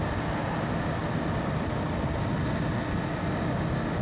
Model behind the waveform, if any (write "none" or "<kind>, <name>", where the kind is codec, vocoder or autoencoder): none